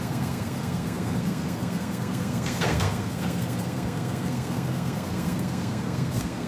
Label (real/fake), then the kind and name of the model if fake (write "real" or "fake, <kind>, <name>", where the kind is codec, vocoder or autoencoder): fake, codec, SNAC